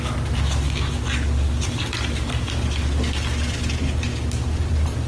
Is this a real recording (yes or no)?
yes